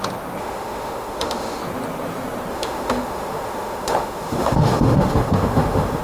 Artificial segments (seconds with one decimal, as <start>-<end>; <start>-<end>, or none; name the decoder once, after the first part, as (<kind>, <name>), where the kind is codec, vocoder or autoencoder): 0.4-1.6 (autoencoder, DAC-VAE); 2.5-6.0